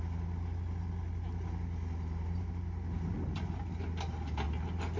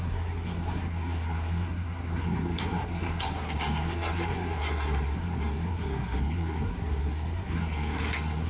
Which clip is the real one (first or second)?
first